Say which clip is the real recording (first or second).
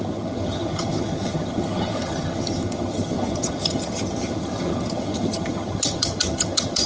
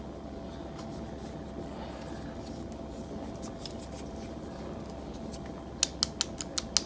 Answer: second